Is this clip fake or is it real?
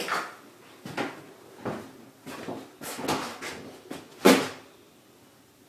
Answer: real